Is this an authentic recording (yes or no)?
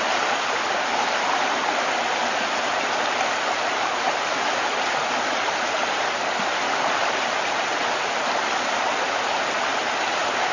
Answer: yes